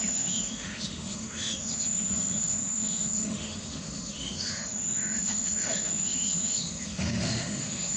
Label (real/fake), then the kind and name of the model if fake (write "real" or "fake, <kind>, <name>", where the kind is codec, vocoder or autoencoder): fake, autoencoder, DAC-VAE